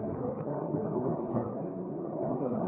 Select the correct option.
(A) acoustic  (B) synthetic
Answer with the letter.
B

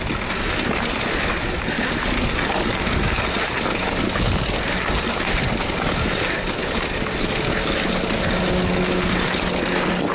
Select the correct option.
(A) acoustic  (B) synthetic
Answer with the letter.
A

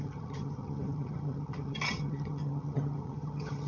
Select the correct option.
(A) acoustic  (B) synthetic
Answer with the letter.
B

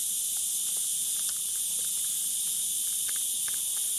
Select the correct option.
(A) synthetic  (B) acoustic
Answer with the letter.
B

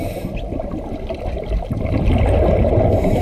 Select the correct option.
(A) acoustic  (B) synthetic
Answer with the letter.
A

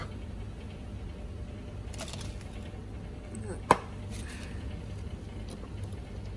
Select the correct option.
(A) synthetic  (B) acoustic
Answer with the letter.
B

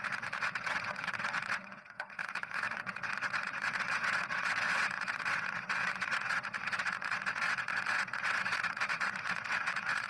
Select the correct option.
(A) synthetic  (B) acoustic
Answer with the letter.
A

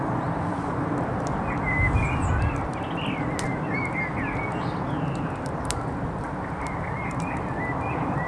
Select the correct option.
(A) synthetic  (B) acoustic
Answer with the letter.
B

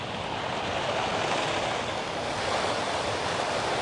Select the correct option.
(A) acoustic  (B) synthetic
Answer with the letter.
A